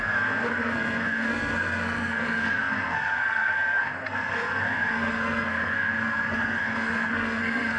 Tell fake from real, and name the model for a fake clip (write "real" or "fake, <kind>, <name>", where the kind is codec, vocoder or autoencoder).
fake, codec, SNAC